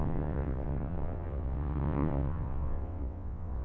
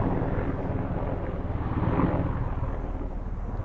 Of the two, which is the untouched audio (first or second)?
second